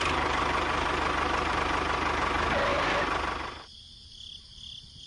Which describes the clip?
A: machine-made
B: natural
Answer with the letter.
B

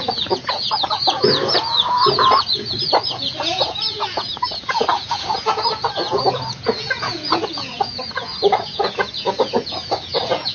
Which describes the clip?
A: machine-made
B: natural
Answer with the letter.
A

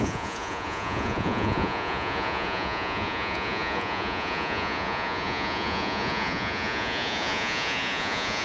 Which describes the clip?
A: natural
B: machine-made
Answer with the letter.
B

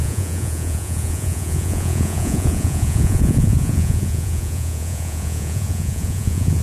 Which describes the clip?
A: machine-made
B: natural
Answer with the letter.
A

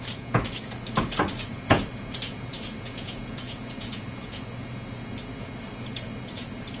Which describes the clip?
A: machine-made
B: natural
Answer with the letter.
A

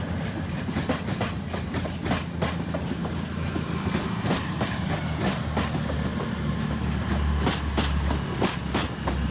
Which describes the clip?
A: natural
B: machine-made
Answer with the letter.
A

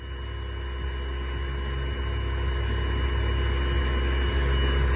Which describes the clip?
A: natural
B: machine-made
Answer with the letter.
A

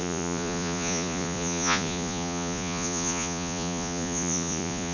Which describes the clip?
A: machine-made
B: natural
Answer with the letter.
A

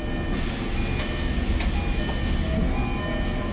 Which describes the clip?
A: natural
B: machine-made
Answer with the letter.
A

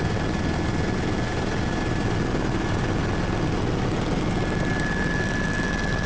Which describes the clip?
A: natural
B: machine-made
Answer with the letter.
A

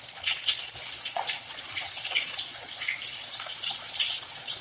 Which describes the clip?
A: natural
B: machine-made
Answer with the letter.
B